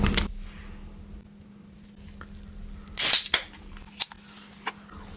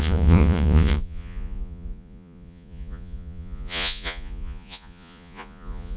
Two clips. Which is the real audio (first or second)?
first